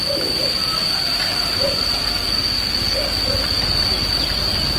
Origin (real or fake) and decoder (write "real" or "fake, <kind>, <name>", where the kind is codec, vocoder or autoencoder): real